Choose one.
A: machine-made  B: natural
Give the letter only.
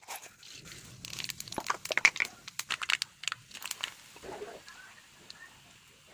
B